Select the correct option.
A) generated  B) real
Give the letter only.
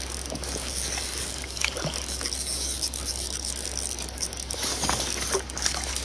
A